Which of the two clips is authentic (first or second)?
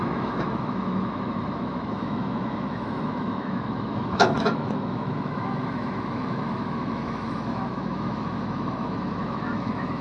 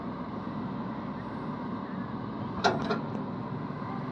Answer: second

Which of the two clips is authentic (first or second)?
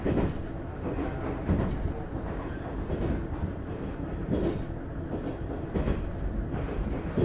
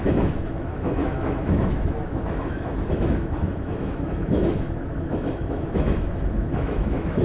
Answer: first